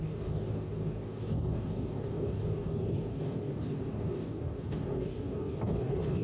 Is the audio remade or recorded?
remade